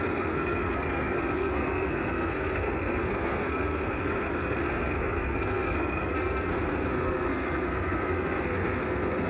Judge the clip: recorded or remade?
remade